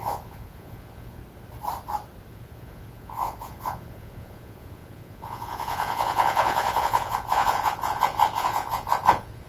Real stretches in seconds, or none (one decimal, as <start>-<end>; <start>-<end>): 1.2-2.3